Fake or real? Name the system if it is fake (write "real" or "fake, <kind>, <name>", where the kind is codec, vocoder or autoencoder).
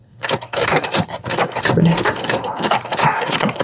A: fake, codec, SNAC